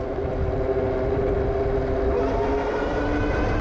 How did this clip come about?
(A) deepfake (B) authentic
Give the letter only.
B